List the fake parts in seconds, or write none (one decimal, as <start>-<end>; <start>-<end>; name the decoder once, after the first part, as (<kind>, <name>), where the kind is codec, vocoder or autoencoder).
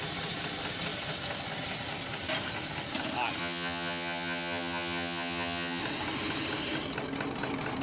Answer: 3.4-5.8 (vocoder, HiFi-GAN)